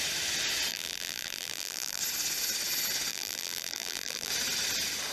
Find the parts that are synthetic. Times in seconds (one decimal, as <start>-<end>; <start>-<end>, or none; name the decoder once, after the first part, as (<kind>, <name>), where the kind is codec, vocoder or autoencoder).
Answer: 0.7-2.0 (vocoder, BigVGAN v2); 3.1-4.3